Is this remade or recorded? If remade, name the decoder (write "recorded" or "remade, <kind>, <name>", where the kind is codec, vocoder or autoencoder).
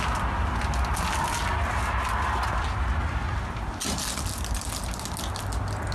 recorded